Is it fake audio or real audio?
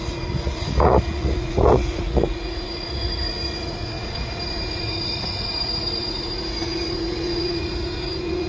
fake